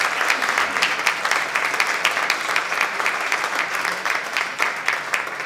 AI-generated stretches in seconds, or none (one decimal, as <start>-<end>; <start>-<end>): 2.6-4.6